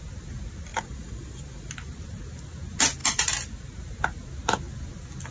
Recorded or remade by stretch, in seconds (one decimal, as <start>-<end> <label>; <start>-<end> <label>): 0.0-0.7 recorded; 0.7-1.7 remade; 1.7-5.3 recorded